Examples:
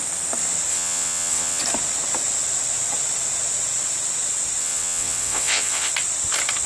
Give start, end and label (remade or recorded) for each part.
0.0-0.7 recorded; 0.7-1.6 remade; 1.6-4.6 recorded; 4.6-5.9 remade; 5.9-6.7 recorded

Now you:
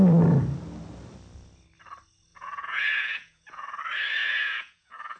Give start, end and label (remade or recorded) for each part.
0.0-2.3 recorded; 2.3-3.8 remade; 3.8-4.2 recorded; 4.2-5.2 remade

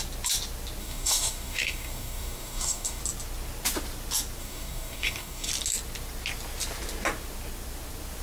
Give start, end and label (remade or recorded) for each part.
0.0-0.8 recorded; 0.8-3.0 remade; 3.0-4.4 recorded; 4.4-5.5 remade; 5.5-8.2 recorded

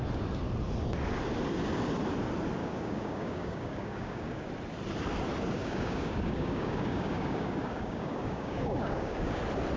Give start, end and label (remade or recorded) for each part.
0.0-2.6 recorded; 2.6-4.5 remade; 4.5-5.6 recorded; 5.6-9.4 remade; 9.4-9.8 recorded

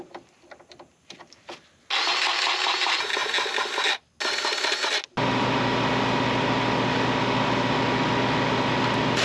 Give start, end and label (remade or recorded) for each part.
0.0-9.2 recorded

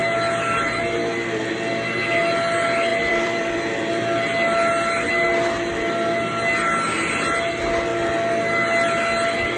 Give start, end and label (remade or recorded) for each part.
0.0-2.9 recorded; 2.9-3.9 remade; 3.9-9.6 recorded

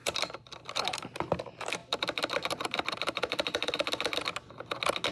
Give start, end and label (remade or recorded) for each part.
0.0-1.4 remade; 1.4-1.8 recorded; 1.8-3.7 remade; 3.7-5.1 recorded

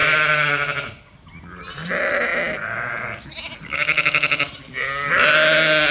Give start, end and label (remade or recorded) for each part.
0.0-5.9 recorded